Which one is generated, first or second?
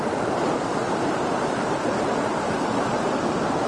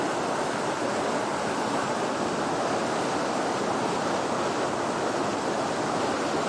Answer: first